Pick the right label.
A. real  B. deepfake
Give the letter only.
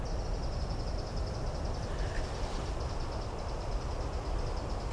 A